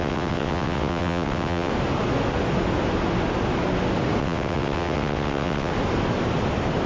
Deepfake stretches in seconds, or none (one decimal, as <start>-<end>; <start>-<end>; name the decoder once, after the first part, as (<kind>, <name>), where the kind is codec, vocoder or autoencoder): 0.0-1.7 (vocoder, WaveNeXt); 4.2-5.7

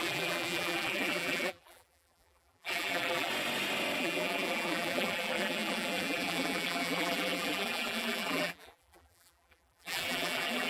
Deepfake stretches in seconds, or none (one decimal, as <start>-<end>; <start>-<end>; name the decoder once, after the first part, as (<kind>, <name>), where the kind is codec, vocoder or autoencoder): 0.0-3.3 (vocoder, BigVGAN v2); 4.0-10.7